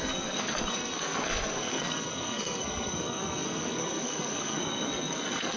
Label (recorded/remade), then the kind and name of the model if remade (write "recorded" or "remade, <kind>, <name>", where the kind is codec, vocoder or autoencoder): remade, codec, SNAC